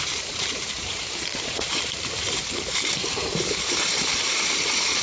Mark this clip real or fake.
fake